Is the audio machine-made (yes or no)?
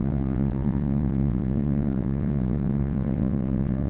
yes